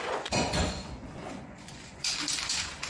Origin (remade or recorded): remade